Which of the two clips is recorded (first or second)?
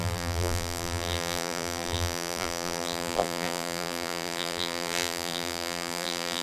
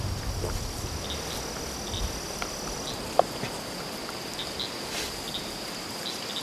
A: second